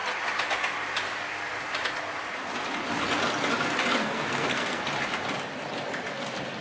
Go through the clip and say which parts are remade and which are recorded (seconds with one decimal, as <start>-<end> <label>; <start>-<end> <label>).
0.0-4.0 recorded; 4.0-4.9 remade; 4.9-6.6 recorded